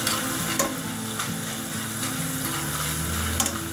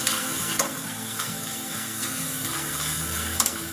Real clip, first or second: first